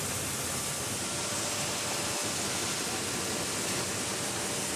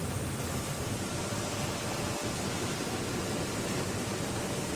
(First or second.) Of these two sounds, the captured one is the first